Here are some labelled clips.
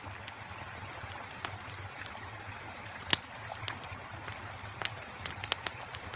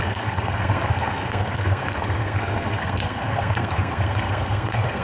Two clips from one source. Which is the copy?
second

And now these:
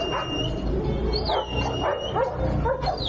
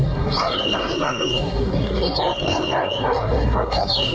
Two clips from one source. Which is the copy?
second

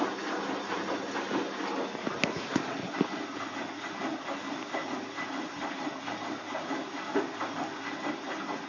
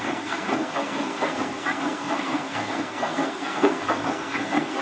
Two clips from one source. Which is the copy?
second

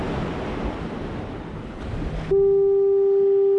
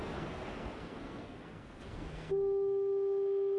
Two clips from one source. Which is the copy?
second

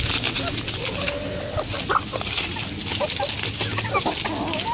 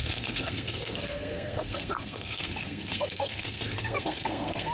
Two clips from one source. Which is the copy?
second